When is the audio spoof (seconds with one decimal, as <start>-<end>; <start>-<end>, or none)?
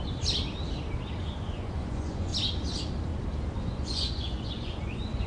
1.2-2.3; 3.6-5.3